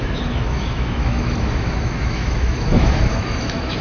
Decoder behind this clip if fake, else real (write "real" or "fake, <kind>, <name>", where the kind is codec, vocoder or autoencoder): fake, autoencoder, DAC-VAE